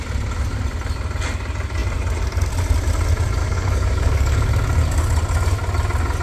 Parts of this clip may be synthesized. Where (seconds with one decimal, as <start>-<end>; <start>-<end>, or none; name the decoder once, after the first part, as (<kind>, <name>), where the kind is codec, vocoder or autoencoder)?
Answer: 3.4-4.5 (codec, DAC)